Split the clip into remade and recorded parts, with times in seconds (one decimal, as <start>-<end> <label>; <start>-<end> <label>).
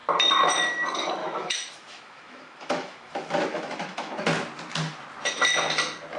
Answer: 0.0-1.2 recorded; 1.2-4.1 remade; 4.1-6.2 recorded